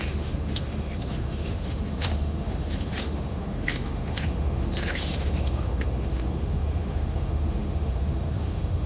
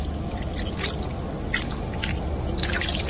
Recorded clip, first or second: second